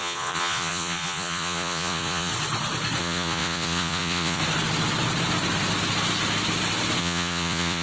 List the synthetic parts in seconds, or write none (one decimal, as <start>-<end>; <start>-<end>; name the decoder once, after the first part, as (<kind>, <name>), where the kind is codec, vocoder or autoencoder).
0.0-2.3 (vocoder, Vocos); 3.0-4.4; 7.0-7.8